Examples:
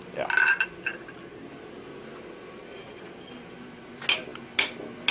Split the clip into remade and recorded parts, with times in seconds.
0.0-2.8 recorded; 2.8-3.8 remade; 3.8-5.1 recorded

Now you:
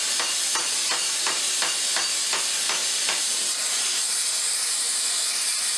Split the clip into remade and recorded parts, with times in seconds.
0.0-2.8 recorded; 2.8-5.8 remade

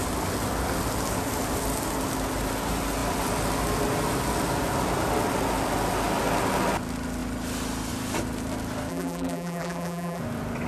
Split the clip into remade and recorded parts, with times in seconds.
0.0-8.9 recorded; 8.9-10.2 remade; 10.2-10.7 recorded

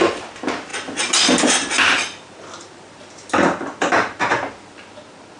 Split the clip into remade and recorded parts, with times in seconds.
0.0-5.4 recorded

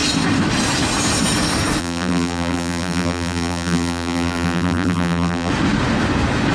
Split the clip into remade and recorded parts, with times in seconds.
0.0-1.8 recorded; 1.8-5.5 remade; 5.5-6.5 recorded

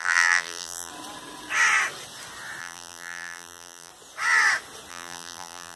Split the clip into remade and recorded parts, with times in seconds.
0.0-0.9 remade; 0.9-2.6 recorded; 2.6-3.9 remade; 3.9-4.9 recorded; 4.9-5.8 remade